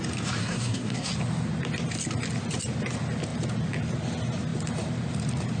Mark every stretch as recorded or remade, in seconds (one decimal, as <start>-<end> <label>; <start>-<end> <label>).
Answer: 0.0-0.4 recorded; 0.4-1.1 remade; 1.1-5.6 recorded